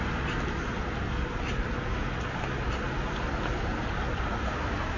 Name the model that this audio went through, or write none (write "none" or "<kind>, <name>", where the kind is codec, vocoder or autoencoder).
none